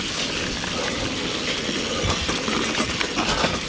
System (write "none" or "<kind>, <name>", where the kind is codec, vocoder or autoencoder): vocoder, BigVGAN v2